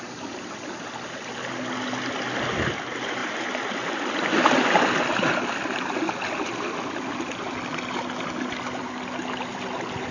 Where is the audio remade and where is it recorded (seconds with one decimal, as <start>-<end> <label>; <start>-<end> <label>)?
0.0-10.1 recorded